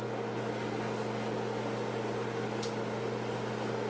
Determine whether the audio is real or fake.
real